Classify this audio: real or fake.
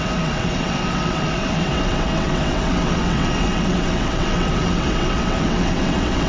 fake